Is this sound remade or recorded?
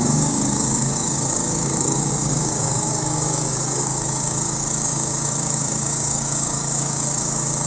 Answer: remade